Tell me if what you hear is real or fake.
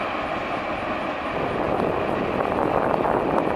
real